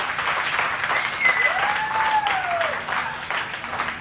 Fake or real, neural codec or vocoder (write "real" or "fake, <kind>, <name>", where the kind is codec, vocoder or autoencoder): real